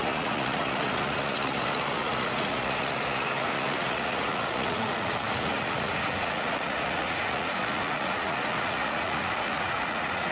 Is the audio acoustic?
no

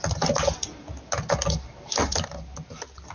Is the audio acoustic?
yes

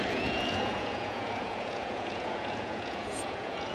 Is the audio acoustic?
no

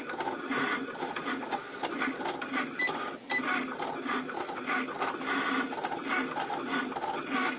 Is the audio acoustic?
yes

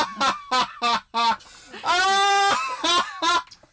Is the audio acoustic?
yes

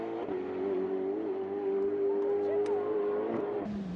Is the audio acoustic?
yes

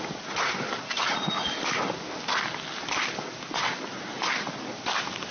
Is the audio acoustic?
yes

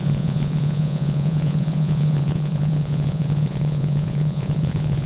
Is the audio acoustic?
no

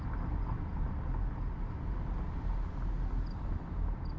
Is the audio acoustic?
yes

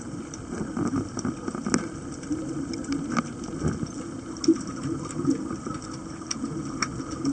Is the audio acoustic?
yes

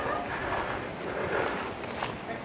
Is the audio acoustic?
yes